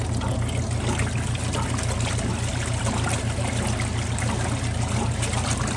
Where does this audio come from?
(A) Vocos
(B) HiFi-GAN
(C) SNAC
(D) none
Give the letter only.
D